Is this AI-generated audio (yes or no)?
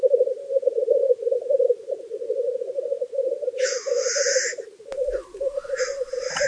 no